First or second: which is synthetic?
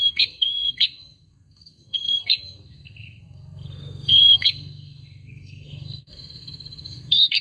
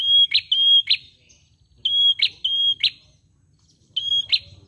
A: first